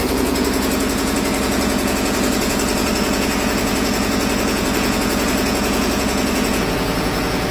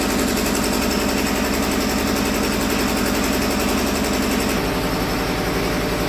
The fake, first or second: first